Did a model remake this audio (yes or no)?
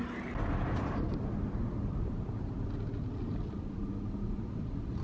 no